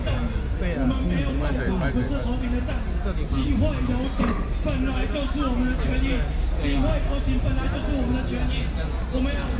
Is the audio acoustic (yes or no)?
yes